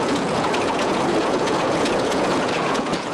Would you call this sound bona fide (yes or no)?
no